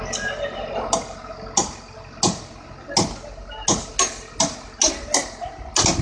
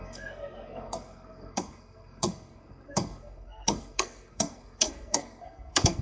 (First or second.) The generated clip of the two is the second